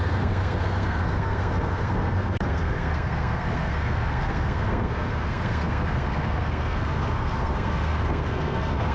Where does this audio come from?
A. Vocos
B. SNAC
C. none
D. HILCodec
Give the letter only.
B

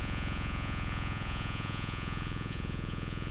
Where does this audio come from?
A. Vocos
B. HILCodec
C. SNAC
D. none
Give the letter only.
A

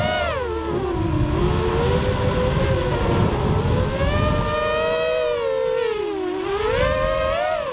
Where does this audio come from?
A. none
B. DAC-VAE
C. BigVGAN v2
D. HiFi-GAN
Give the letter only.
A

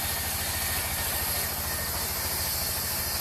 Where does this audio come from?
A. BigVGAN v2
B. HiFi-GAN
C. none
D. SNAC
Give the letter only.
C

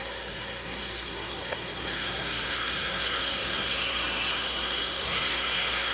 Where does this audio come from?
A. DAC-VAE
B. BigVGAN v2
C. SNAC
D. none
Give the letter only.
C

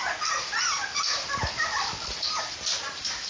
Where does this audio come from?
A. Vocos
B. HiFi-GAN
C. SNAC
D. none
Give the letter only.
D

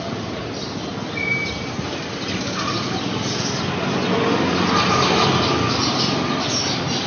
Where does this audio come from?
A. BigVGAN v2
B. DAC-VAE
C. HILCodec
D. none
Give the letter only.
D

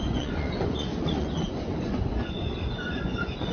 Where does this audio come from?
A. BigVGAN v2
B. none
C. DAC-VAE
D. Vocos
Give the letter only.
D